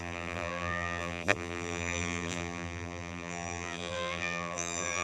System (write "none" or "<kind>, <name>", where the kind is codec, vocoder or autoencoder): vocoder, BigVGAN v2